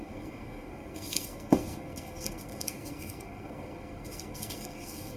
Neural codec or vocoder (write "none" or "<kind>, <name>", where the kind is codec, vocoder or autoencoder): codec, SNAC